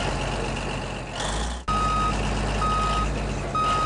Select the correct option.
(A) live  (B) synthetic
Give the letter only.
A